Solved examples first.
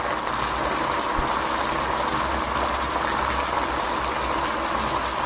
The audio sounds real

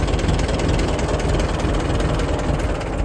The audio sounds real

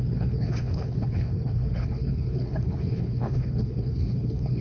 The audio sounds fake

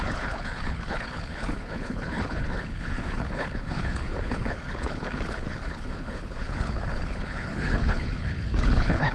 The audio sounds fake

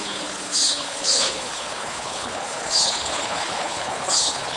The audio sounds fake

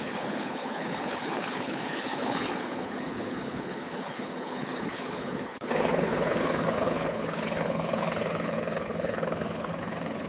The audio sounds fake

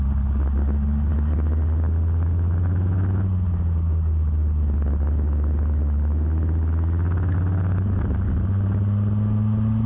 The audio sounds real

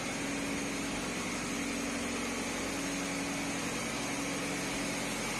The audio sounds real